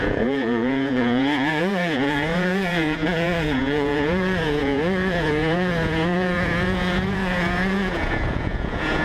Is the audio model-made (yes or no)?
yes